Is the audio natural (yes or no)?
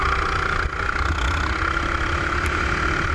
yes